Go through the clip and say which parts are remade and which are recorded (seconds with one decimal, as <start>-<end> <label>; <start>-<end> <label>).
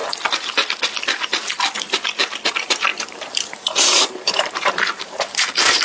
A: 0.0-2.5 recorded; 2.5-5.8 remade